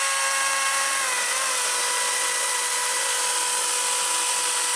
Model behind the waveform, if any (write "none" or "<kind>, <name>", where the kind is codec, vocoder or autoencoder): none